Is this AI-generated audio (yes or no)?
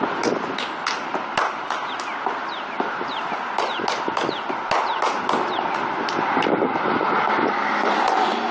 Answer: no